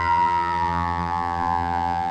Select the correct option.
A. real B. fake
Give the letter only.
B